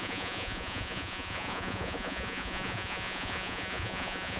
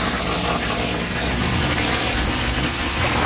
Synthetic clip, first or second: first